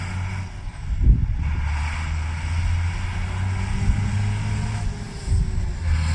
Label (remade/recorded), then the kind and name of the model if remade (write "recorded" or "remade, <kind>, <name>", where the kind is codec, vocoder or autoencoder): recorded